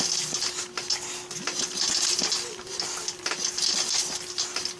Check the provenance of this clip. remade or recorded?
recorded